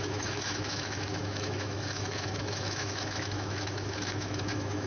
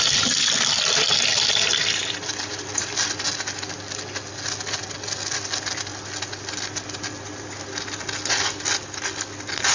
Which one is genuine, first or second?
second